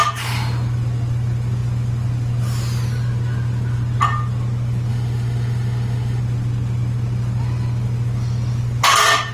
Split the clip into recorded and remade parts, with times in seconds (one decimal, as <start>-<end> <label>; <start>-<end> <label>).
0.0-4.9 recorded; 4.9-6.2 remade; 6.2-9.3 recorded